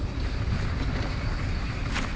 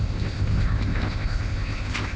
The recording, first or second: first